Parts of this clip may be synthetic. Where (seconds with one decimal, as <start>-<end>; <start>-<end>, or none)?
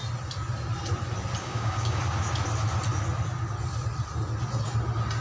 1.4-2.0